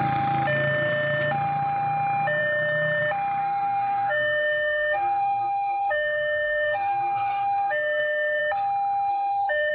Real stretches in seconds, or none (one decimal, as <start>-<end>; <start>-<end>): 0.0-3.4; 8.4-9.1